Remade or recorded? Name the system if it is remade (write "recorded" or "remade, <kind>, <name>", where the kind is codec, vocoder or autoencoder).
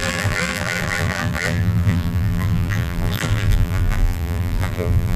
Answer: remade, vocoder, BigVGAN v2